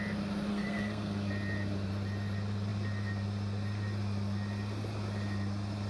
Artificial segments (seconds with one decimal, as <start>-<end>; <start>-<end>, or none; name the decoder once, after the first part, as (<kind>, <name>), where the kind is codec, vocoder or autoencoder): 0.5-1.3 (codec, SNAC)